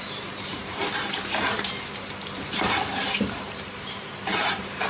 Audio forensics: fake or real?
fake